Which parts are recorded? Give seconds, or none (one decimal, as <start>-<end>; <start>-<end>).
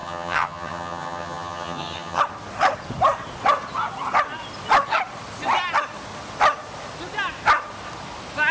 2.2-8.5